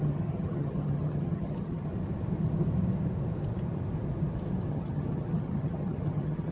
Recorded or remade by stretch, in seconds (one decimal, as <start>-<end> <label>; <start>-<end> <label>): 0.0-1.9 remade; 1.9-4.7 recorded; 4.7-6.5 remade